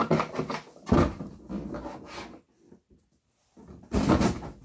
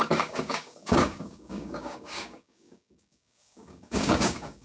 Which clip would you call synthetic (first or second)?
second